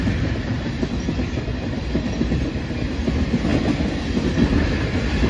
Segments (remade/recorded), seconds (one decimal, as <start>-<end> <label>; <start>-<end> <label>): 0.0-5.3 recorded